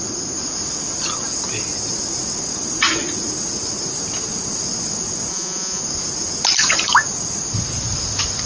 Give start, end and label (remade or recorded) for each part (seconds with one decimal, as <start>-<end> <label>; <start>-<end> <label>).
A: 0.0-5.3 recorded; 5.3-5.8 remade; 5.8-8.5 recorded